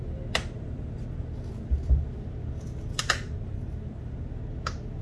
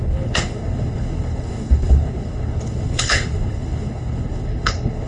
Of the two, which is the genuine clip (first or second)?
first